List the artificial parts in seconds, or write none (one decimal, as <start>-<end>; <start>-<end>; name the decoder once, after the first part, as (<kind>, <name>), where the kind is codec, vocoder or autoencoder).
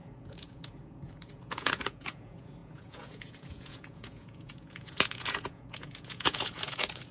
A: 0.0-7.1 (vocoder, Vocos)